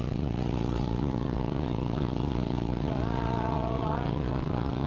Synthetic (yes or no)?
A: yes